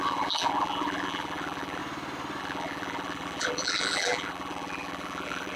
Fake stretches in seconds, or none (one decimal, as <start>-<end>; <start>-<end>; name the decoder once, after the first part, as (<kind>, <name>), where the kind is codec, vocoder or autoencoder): 0.0-1.8 (vocoder, BigVGAN v2); 2.4-5.6